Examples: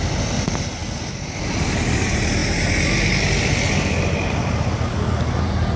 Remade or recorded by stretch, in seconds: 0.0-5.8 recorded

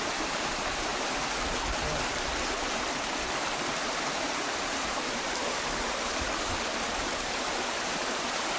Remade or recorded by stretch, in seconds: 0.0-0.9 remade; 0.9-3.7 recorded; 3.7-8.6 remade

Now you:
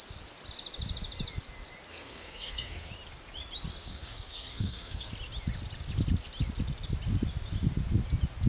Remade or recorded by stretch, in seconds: 0.0-1.9 recorded; 1.9-2.9 remade; 2.9-3.8 recorded; 3.8-5.1 remade; 5.1-8.5 recorded

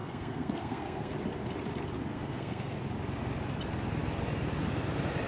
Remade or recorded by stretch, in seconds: 0.0-1.1 remade; 1.1-2.1 recorded; 2.1-2.8 remade; 2.8-5.3 recorded

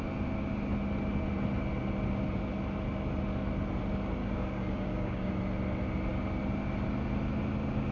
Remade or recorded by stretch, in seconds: 0.0-4.2 recorded; 4.2-5.3 remade; 5.3-7.9 recorded

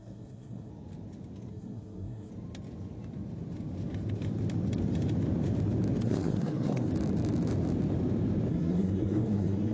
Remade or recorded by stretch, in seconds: 0.0-0.7 remade; 0.7-1.5 recorded; 1.5-2.3 remade; 2.3-6.0 recorded; 6.0-6.9 remade; 6.9-8.5 recorded; 8.5-9.7 remade

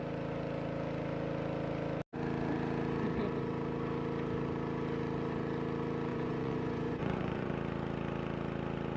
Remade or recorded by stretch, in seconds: 0.0-6.1 recorded; 6.1-7.5 remade; 7.5-9.0 recorded

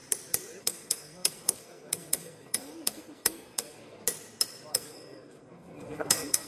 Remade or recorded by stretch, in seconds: 0.0-0.6 recorded; 0.6-4.0 remade; 4.0-4.7 recorded; 4.7-6.5 remade